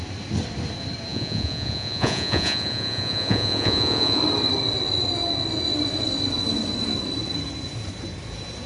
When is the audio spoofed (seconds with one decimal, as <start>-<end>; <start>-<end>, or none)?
1.1-4.2